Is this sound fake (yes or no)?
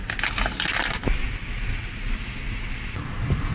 no